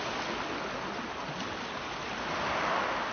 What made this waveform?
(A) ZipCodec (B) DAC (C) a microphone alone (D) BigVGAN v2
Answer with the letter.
C